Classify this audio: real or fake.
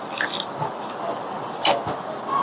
real